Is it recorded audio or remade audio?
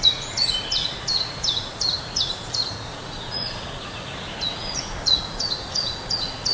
remade